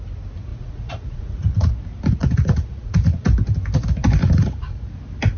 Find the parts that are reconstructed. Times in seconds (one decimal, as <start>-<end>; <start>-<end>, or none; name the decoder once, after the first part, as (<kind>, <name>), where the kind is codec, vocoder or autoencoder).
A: 0.5-1.7 (vocoder, Vocos); 2.2-3.3; 4.2-4.9